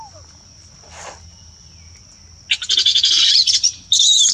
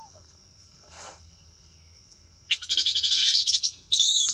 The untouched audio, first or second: first